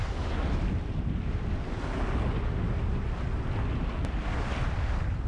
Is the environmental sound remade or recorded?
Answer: recorded